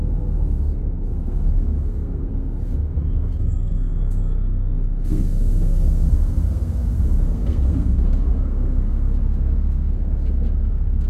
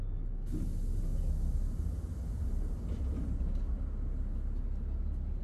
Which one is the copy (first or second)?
first